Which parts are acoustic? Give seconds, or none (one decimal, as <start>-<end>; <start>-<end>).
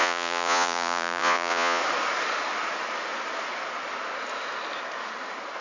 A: 1.8-5.6